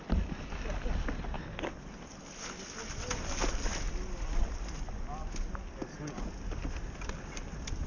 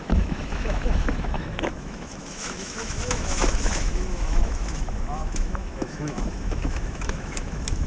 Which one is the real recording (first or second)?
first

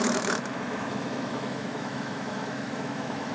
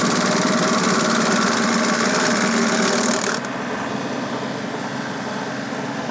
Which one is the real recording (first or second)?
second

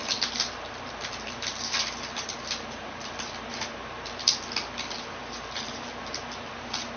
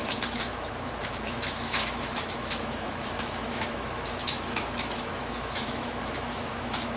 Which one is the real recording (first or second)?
first